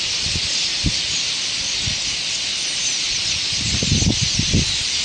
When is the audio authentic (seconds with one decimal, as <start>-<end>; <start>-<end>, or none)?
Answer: 0.0-5.0